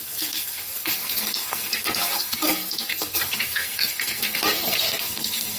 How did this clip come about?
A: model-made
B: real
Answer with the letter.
A